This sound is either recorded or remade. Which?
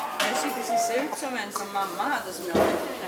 recorded